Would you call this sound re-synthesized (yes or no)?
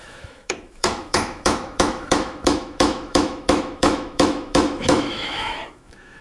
yes